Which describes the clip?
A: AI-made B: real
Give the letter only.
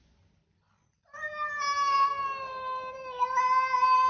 B